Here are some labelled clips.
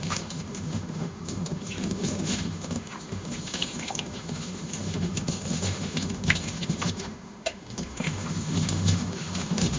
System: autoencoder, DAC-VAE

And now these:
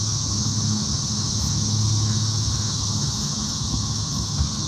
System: autoencoder, DAC-VAE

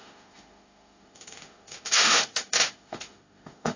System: autoencoder, DAC-VAE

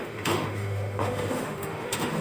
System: autoencoder, DAC-VAE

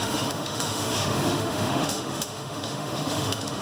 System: autoencoder, DAC-VAE